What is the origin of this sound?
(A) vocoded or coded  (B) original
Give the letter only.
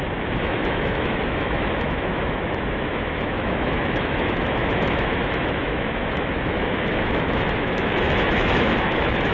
A